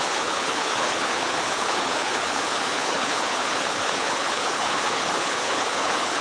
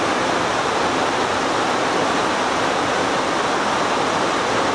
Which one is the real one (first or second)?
second